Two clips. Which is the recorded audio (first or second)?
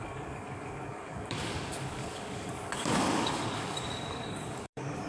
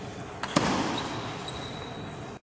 second